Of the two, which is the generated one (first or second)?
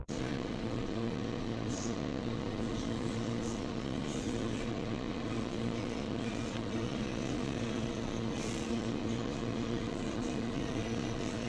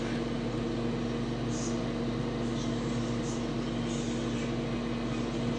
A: first